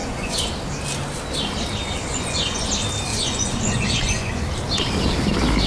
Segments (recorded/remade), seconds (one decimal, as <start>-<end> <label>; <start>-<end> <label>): 0.0-0.5 remade; 0.5-2.1 recorded; 2.1-2.7 remade; 2.7-3.1 recorded; 3.1-4.4 remade; 4.4-5.7 recorded